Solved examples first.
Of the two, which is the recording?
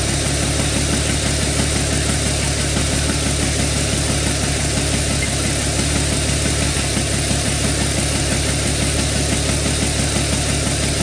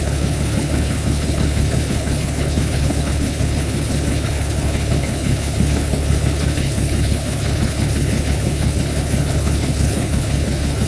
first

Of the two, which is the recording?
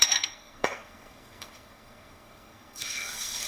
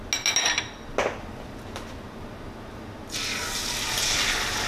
second